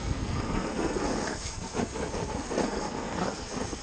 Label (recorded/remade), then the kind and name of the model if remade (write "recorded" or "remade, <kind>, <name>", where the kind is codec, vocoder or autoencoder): remade, codec, SNAC